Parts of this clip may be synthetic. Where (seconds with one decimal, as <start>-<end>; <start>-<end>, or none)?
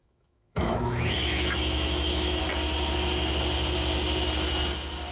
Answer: 0.0-2.4